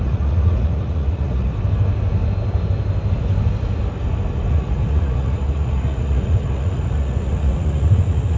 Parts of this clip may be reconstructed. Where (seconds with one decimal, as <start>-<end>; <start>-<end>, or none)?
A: 0.0-1.5; 4.5-8.4